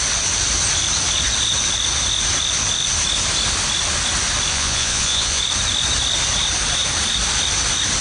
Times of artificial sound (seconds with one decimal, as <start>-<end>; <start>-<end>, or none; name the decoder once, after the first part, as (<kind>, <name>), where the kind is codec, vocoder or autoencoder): 4.5-5.4 (vocoder, Vocos)